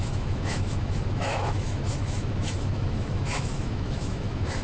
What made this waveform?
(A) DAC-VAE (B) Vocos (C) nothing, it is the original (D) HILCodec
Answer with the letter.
A